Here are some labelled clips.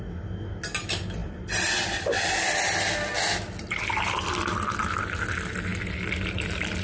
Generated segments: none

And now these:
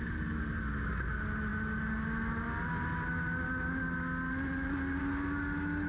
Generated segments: none